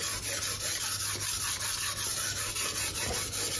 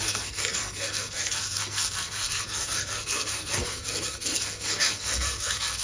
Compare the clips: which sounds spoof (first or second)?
second